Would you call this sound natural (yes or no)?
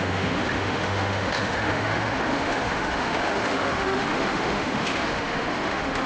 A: no